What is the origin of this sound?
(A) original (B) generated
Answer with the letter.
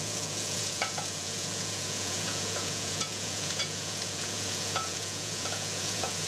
B